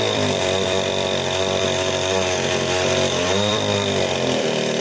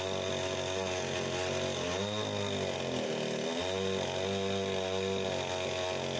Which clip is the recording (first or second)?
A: second